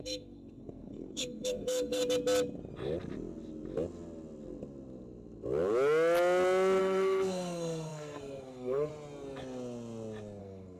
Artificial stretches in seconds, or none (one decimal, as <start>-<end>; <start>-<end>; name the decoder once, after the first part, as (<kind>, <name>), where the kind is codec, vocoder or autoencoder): 0.0-2.0 (codec, SNAC); 6.8-8.9; 10.4-10.8